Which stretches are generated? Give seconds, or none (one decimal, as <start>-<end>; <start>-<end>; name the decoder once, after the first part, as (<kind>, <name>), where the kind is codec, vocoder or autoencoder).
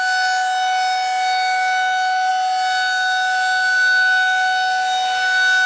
none